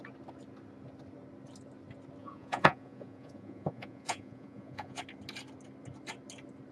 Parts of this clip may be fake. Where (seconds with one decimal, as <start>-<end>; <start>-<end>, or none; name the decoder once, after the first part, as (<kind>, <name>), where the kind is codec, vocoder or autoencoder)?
2.2-5.0 (vocoder, Vocos)